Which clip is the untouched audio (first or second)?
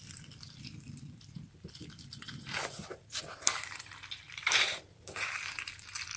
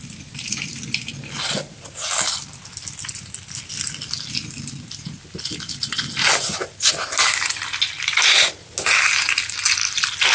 second